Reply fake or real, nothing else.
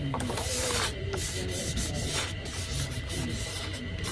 real